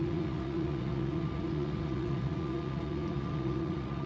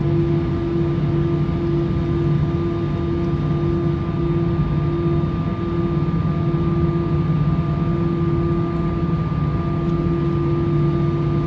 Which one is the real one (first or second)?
second